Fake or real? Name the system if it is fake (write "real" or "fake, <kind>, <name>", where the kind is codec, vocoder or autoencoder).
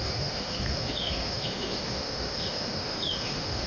fake, autoencoder, DAC-VAE